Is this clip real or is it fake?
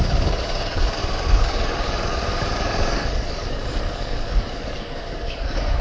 fake